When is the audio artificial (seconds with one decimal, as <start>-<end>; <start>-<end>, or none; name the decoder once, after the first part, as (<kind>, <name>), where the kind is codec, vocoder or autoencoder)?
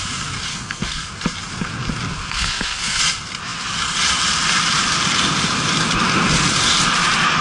0.5-1.1 (codec, SNAC); 2.2-3.0